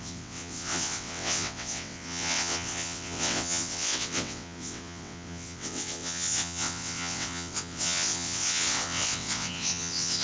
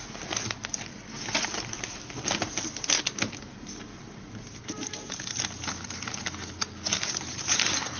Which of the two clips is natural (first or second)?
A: second